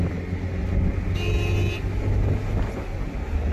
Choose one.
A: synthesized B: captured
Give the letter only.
B